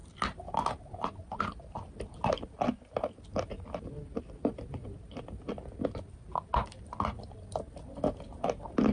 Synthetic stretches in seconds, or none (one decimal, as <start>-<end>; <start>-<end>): none